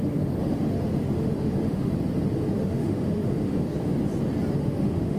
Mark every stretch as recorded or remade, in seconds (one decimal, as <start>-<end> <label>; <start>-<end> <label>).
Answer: 0.0-1.9 remade; 1.9-2.5 recorded; 2.5-3.7 remade; 3.7-4.5 recorded; 4.5-5.2 remade